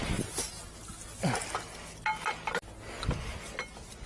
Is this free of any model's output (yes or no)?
yes